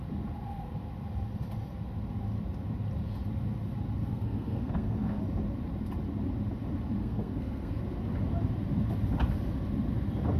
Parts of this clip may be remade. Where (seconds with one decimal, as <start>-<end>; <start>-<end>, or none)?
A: 4.1-5.2; 7.0-7.8